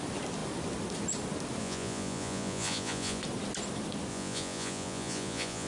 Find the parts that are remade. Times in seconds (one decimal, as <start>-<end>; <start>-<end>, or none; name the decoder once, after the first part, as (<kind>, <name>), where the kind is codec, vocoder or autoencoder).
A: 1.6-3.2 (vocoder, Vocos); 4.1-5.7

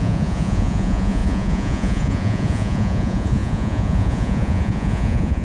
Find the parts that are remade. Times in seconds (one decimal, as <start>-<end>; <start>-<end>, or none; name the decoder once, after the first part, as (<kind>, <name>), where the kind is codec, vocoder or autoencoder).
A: 0.0-5.4 (vocoder, Vocos)

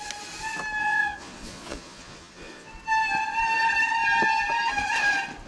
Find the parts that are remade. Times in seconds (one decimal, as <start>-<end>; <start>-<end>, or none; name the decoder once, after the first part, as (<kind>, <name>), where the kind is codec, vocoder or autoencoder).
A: 0.8-2.7 (vocoder, Vocos)

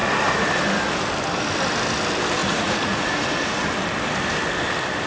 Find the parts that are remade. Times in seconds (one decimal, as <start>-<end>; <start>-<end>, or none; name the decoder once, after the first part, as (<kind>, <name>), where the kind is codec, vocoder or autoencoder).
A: 2.4-3.7 (vocoder, Vocos)

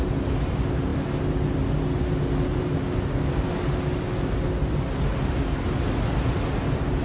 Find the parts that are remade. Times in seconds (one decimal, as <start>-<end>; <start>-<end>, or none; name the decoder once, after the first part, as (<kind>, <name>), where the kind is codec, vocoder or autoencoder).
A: none